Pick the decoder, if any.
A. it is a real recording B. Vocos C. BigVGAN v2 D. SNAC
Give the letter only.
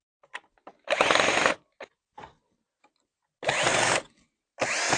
A